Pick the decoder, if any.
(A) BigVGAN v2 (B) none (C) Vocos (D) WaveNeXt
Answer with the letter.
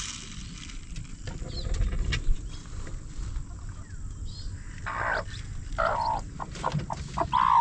B